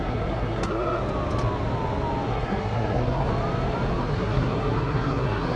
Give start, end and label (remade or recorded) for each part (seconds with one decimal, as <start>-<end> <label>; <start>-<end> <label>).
0.0-1.0 remade; 1.0-2.3 recorded; 2.3-3.3 remade; 3.3-4.0 recorded; 4.0-5.6 remade